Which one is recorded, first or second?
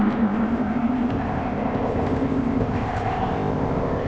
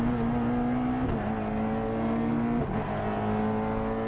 second